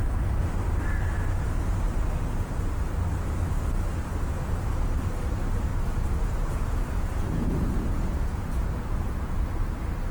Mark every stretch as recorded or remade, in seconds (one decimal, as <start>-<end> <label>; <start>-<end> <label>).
0.0-5.7 recorded; 5.7-9.4 remade; 9.4-10.1 recorded